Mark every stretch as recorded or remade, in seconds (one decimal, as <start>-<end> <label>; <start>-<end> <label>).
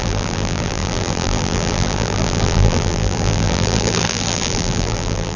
0.0-5.4 remade